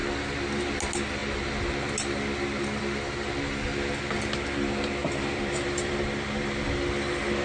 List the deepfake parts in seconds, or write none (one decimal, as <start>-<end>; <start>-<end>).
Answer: 5.0-6.0